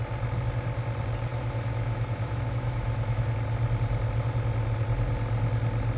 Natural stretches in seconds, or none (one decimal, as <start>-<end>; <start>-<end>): 0.0-1.3; 3.3-6.0